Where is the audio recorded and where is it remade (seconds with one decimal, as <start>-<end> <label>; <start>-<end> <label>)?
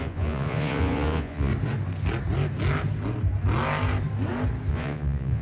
0.0-1.5 remade; 1.5-4.7 recorded; 4.7-5.4 remade